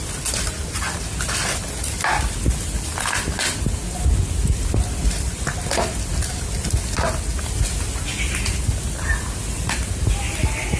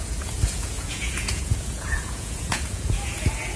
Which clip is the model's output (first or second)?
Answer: second